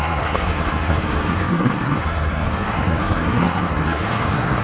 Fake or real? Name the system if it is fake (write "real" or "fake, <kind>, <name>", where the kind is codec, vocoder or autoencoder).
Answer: fake, codec, SNAC